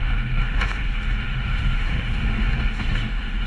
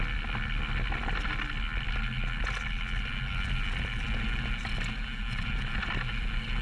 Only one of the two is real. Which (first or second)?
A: second